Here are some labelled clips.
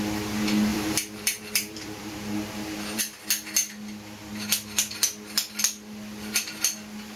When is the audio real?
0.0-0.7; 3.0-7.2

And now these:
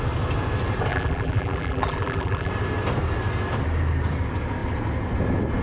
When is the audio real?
0.0-0.9; 2.5-5.6

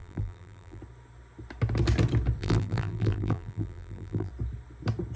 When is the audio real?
0.8-2.4; 4.3-5.2

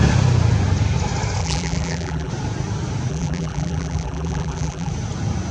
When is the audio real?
0.0-1.4; 2.3-3.1; 4.9-5.5